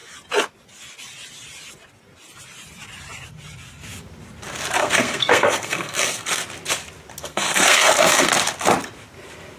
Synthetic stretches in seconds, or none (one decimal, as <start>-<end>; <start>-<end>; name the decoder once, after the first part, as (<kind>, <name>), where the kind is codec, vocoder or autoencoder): 4.8-6.4 (codec, SNAC); 7.2-8.3

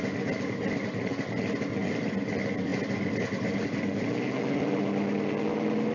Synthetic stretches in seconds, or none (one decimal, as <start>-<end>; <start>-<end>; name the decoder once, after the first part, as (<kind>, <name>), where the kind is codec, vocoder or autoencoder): none